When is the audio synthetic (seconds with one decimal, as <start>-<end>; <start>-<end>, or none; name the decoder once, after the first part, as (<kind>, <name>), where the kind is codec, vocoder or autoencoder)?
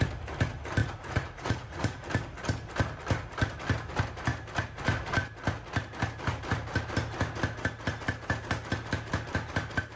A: 0.8-2.0 (vocoder, Vocos)